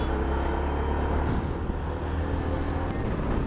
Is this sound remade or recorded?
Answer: recorded